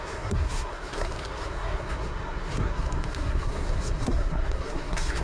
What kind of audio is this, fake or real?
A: fake